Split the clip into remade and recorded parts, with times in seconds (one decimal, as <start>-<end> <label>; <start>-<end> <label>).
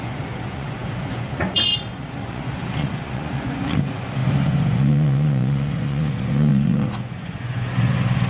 0.0-8.3 remade